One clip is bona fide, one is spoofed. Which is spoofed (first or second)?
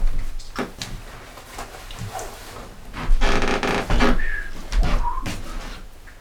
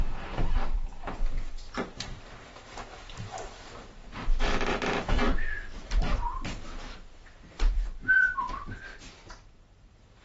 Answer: second